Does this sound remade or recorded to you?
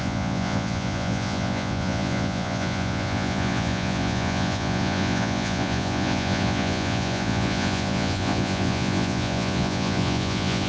remade